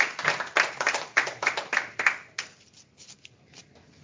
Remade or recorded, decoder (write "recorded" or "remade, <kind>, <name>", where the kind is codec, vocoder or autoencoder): recorded